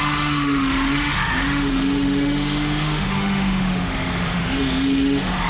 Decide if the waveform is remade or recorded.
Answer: remade